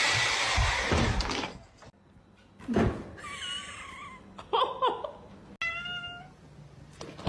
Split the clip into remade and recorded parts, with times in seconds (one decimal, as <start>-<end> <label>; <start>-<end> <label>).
0.0-7.3 recorded

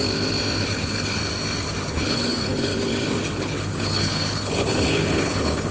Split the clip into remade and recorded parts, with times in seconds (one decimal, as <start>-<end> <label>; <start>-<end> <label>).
0.0-0.6 recorded; 0.6-1.2 remade; 1.2-1.8 recorded; 1.8-5.7 remade